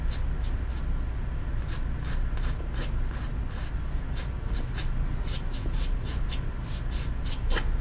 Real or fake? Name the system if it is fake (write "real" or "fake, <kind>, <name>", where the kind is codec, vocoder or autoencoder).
real